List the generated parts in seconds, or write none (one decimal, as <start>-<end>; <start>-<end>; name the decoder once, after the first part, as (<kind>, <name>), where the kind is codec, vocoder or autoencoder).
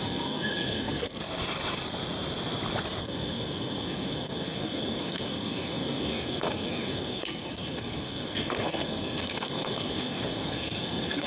0.0-1.2 (codec, SNAC); 3.0-11.3